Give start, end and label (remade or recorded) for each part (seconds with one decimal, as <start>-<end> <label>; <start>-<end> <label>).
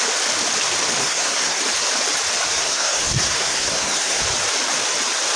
0.0-1.0 recorded; 1.0-1.6 remade; 1.6-2.5 recorded; 2.5-4.2 remade; 4.2-5.4 recorded